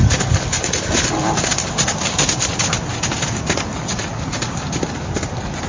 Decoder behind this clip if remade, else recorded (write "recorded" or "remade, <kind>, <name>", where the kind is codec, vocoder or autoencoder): recorded